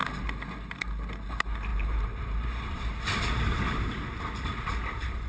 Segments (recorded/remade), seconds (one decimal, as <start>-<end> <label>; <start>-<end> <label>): 0.0-1.7 recorded; 1.7-5.3 remade

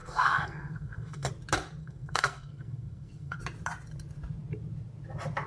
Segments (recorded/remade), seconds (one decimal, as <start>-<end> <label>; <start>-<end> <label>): 0.0-1.3 remade; 1.3-1.8 recorded; 1.8-3.4 remade; 3.4-5.5 recorded

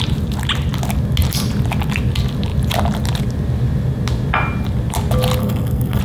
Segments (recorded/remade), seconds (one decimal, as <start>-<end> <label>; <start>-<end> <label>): 0.0-5.4 recorded; 5.4-6.0 remade

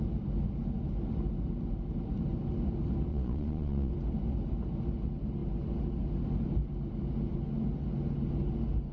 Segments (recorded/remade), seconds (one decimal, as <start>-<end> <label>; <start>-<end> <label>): 0.0-3.1 recorded; 3.1-3.9 remade; 3.9-8.9 recorded

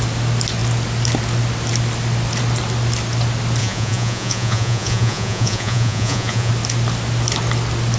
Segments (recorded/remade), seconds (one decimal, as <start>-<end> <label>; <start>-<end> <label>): 0.0-3.6 recorded; 3.6-6.5 remade; 6.5-8.0 recorded